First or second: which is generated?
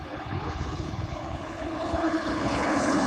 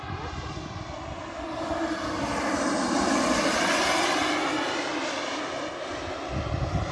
first